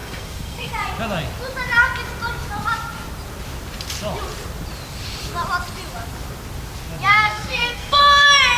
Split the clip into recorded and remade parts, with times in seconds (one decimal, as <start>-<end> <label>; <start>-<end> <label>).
0.0-0.7 remade; 0.7-7.1 recorded; 7.1-8.0 remade; 8.0-8.6 recorded